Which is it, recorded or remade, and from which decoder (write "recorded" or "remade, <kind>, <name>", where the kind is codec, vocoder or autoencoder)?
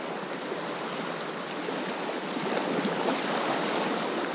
recorded